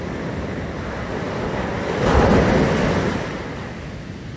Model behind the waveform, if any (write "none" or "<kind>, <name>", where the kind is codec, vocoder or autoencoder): none